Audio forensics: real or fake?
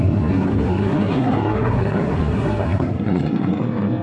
fake